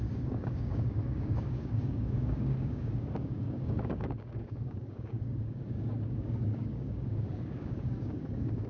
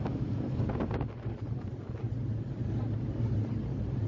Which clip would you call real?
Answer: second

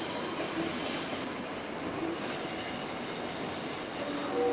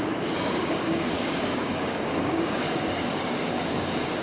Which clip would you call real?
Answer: first